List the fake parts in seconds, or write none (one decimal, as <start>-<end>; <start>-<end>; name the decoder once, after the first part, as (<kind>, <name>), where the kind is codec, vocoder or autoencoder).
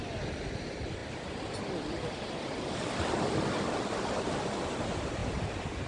none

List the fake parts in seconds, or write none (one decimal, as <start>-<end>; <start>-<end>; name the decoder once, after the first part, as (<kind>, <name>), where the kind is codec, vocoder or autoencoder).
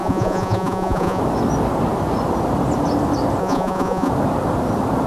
0.0-1.2 (vocoder, Vocos); 3.4-4.1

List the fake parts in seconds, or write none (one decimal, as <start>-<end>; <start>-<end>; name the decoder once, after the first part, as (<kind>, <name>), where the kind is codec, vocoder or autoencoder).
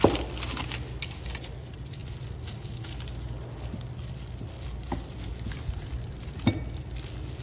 none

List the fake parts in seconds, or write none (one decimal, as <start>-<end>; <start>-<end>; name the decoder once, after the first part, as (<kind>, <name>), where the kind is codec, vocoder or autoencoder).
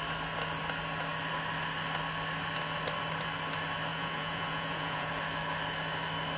3.9-5.1 (vocoder, Vocos)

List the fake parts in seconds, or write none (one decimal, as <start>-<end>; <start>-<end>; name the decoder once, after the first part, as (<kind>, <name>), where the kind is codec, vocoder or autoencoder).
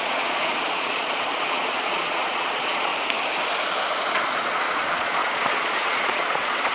0.0-2.9 (vocoder, Vocos); 3.9-6.7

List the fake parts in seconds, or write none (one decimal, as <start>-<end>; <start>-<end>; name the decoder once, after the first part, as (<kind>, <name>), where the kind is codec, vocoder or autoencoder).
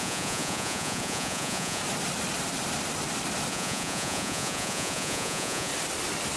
0.0-1.8 (vocoder, Vocos); 3.5-5.7